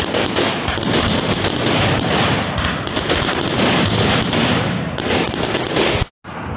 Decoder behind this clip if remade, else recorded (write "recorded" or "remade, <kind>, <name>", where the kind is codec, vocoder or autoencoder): recorded